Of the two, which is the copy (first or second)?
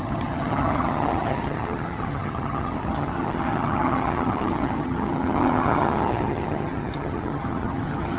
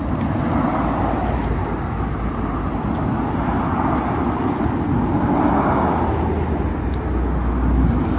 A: first